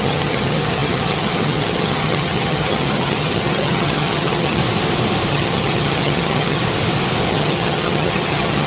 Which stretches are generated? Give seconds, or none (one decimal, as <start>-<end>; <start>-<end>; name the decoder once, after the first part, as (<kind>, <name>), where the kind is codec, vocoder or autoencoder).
0.0-4.6 (vocoder, HiFi-GAN); 5.3-6.6; 7.3-8.7